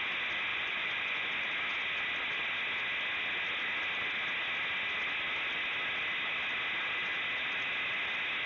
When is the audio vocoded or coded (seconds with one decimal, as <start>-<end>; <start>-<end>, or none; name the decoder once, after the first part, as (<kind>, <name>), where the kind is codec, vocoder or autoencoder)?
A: 0.5-1.4 (vocoder, Vocos)